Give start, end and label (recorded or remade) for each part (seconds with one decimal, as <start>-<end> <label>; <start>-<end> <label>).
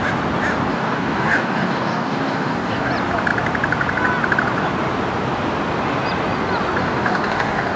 0.0-0.7 recorded; 0.7-2.9 remade; 2.9-6.8 recorded; 6.8-7.8 remade